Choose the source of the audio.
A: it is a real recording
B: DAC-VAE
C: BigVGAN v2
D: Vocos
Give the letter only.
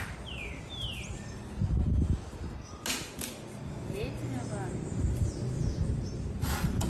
A